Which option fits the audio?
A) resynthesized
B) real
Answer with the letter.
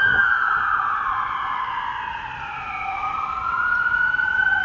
B